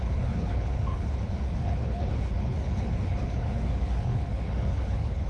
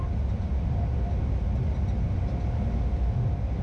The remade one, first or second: first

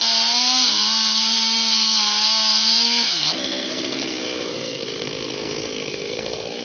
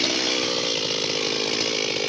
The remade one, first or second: first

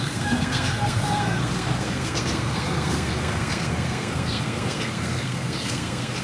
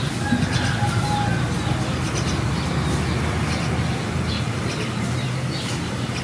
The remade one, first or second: first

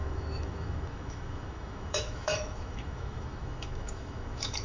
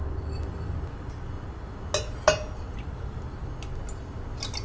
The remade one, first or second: first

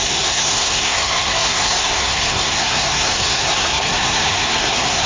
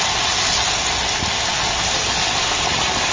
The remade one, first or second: first